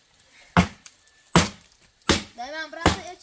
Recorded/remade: recorded